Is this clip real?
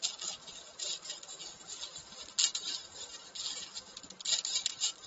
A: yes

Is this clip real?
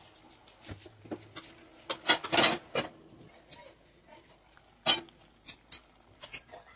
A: yes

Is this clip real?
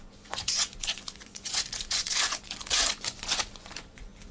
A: no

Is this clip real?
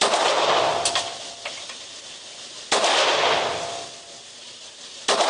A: yes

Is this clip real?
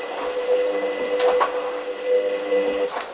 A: yes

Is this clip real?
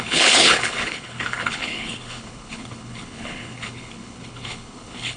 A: no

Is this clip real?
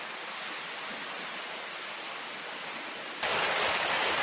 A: yes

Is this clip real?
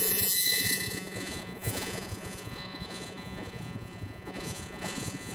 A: no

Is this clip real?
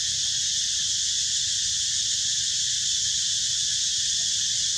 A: yes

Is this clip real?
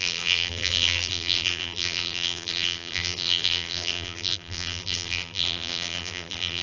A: no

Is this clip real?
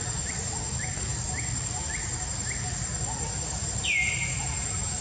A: yes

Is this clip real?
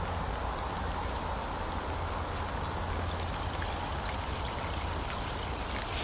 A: yes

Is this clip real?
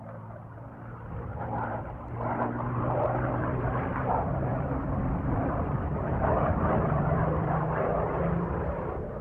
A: no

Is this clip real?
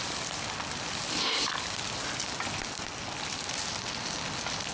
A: no